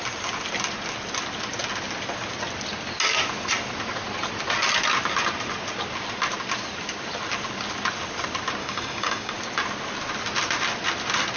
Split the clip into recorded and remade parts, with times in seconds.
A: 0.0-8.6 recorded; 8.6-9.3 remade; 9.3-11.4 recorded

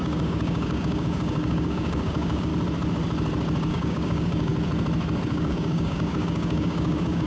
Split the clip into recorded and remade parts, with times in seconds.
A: 0.0-2.5 remade; 2.5-3.7 recorded; 3.7-4.5 remade; 4.5-5.3 recorded; 5.3-7.3 remade

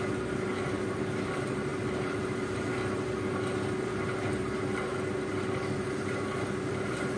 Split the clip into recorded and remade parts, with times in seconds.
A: 0.0-7.2 recorded

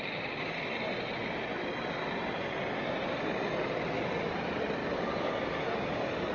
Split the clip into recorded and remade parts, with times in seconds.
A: 0.0-4.8 recorded; 4.8-6.3 remade

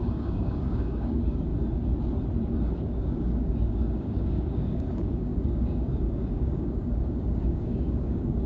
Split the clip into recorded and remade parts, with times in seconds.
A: 0.0-1.5 remade; 1.5-2.8 recorded; 2.8-8.5 remade

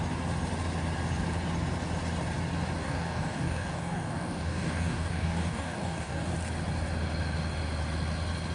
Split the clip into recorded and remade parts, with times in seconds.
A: 0.0-2.8 recorded; 2.8-6.3 remade; 6.3-8.5 recorded